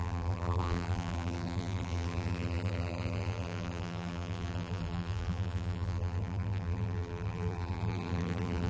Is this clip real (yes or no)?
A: no